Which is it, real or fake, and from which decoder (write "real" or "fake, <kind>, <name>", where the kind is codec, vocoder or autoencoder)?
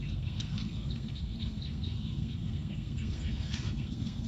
fake, codec, SNAC